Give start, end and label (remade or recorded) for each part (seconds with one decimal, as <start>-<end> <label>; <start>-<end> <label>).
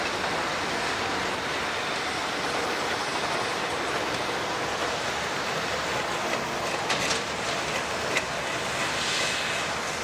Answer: 0.0-10.0 recorded